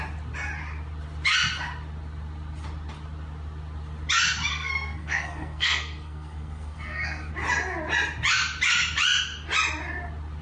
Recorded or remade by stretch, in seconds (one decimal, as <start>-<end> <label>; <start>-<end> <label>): 0.0-4.5 recorded; 4.5-7.3 remade; 7.3-10.4 recorded